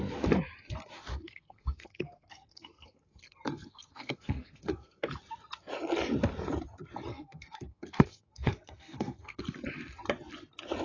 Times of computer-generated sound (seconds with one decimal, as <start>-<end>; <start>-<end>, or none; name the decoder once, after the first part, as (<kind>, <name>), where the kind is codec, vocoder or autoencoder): 1.1-5.1 (codec, SNAC); 7.1-9.4